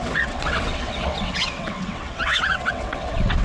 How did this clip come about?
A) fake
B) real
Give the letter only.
A